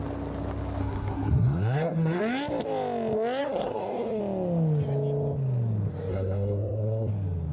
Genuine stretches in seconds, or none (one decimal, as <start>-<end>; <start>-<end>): 0.0-0.8; 2.2-3.4; 4.2-6.1; 7.1-7.5